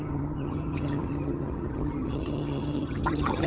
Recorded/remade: remade